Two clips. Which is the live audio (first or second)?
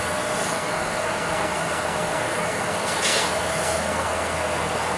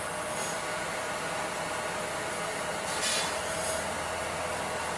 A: second